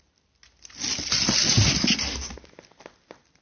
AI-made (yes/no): no